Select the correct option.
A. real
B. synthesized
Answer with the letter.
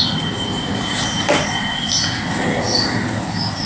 A